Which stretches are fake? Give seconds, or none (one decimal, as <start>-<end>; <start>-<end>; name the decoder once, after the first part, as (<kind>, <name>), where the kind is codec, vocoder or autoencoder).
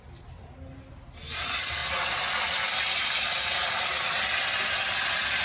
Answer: none